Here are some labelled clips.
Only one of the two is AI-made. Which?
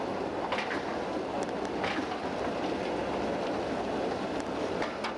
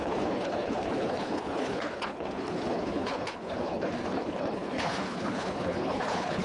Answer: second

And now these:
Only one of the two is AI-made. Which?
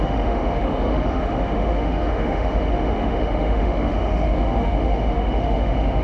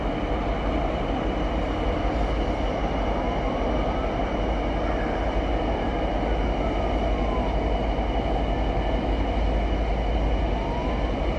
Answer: first